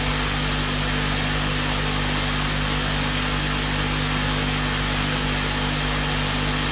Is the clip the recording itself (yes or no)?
yes